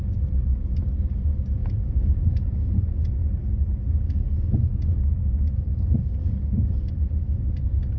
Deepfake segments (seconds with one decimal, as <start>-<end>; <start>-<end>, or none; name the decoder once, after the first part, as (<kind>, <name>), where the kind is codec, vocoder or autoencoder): none